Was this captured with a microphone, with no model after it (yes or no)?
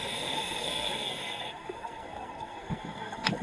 no